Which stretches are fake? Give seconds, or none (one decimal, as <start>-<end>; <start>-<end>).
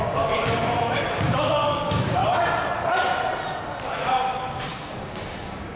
0.0-2.2; 4.0-5.8